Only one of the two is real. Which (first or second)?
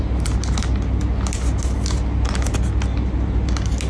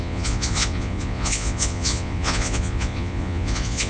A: first